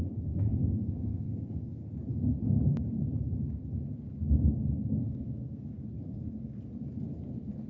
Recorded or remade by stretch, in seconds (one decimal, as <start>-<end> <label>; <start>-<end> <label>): 0.0-1.8 remade; 1.8-5.0 recorded; 5.0-5.7 remade; 5.7-7.7 recorded